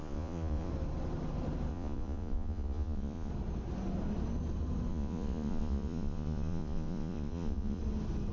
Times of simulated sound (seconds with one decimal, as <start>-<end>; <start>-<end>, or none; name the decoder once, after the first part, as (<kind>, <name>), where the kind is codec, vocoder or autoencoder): 0.0-0.7 (vocoder, Vocos); 1.7-3.3; 4.9-7.8